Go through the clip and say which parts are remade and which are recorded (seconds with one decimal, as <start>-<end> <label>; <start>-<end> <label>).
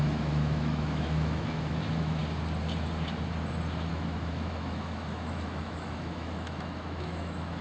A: 0.0-2.2 remade; 2.2-3.9 recorded; 3.9-7.6 remade